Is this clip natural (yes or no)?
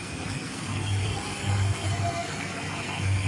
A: no